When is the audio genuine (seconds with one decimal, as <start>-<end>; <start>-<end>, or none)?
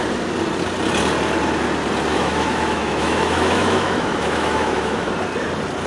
0.0-2.1; 5.1-5.9